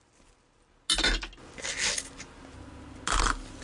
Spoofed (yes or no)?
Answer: no